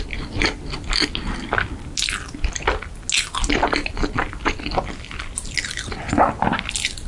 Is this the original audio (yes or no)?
yes